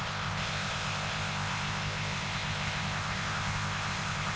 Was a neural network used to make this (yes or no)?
yes